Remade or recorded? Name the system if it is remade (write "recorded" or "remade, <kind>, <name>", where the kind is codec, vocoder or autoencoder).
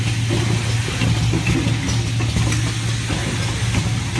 recorded